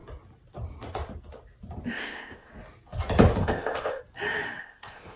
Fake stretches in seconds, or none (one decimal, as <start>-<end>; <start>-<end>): 1.9-2.5; 3.4-4.0; 4.6-5.2